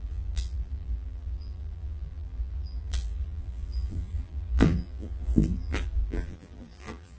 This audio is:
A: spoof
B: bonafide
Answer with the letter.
A